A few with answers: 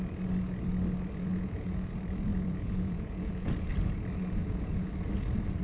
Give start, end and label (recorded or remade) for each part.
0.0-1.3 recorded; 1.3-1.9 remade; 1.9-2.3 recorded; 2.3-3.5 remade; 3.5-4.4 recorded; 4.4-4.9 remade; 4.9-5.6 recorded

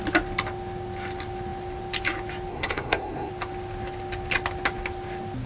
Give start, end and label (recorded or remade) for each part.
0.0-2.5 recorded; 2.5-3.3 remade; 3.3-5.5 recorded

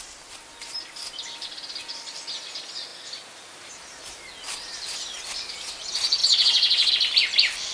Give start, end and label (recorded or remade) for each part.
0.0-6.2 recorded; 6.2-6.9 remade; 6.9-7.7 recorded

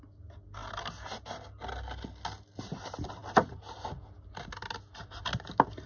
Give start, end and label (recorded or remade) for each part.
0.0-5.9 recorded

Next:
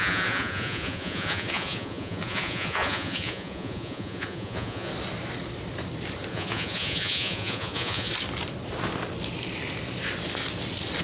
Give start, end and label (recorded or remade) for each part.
0.0-4.9 remade; 4.9-6.3 recorded; 6.3-8.1 remade; 8.1-11.0 recorded

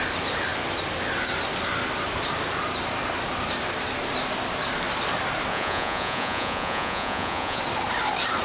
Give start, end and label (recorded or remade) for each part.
0.0-5.5 recorded; 5.5-7.6 remade; 7.6-8.4 recorded